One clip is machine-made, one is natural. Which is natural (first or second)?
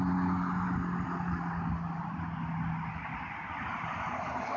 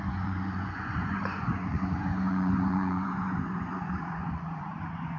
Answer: first